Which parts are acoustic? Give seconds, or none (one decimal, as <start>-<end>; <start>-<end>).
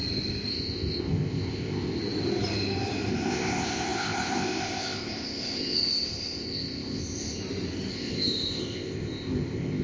0.0-0.5; 2.0-3.1; 7.4-7.9